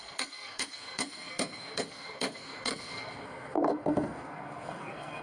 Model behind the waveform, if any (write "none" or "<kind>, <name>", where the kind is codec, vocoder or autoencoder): codec, SNAC